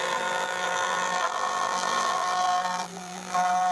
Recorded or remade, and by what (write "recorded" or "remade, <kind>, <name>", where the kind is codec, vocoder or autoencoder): remade, vocoder, BigVGAN v2